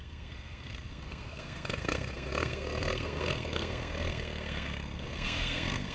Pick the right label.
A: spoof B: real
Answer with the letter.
A